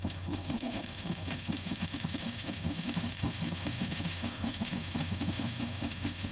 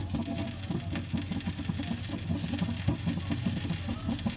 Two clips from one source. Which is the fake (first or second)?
first